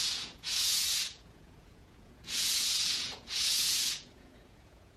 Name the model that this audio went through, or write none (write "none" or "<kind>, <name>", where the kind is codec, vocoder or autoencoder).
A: vocoder, Vocos